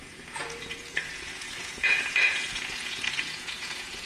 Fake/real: fake